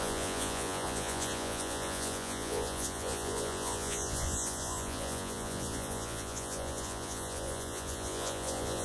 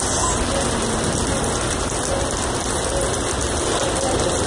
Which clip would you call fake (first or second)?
first